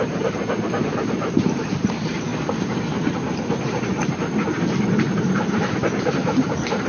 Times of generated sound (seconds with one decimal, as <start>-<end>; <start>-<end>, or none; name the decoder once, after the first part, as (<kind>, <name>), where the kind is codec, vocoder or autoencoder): 0.0-2.3 (vocoder, BigVGAN v2); 5.0-6.9